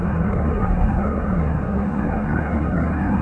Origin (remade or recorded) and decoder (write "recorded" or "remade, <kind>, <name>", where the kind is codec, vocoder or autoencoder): remade, codec, SNAC